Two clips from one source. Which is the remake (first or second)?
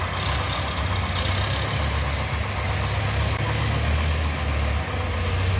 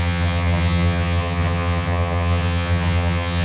second